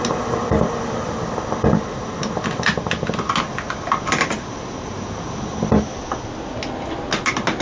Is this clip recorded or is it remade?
recorded